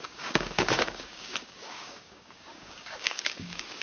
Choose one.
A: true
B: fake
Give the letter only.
B